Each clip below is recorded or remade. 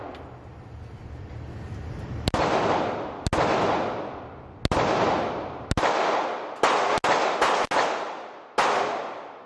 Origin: recorded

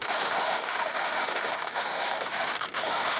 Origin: remade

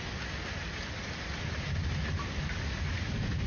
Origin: recorded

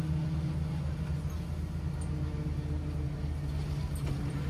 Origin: recorded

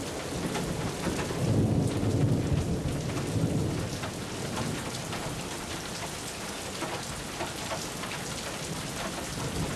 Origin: recorded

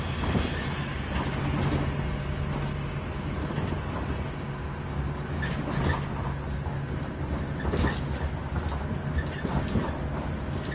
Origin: recorded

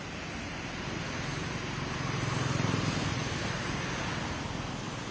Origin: recorded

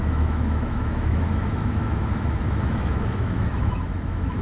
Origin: remade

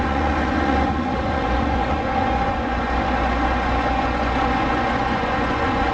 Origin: remade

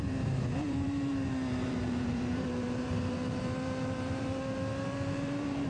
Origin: remade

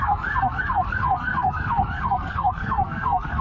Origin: remade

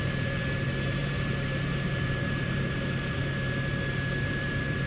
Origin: remade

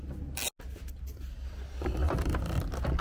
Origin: recorded